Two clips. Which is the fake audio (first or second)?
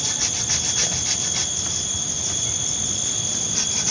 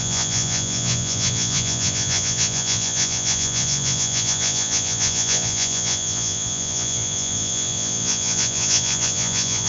second